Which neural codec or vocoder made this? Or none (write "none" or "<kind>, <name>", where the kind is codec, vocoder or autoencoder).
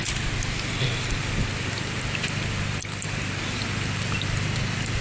none